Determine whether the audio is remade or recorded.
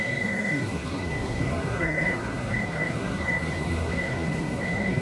remade